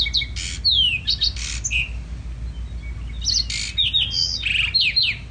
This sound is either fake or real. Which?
real